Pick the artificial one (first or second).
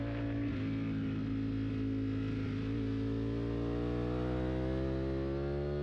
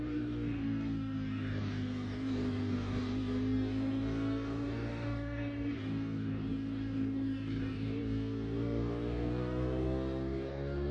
second